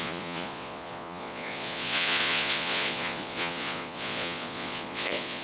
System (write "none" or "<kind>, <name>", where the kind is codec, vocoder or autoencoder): vocoder, Vocos